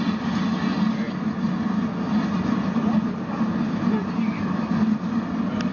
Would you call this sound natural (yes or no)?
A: yes